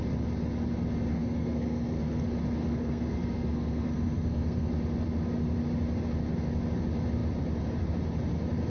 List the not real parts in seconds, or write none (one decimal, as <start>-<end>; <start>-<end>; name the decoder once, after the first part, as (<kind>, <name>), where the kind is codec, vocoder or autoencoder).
1.1-2.2 (codec, SNAC); 2.6-4.7